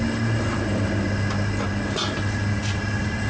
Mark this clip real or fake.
real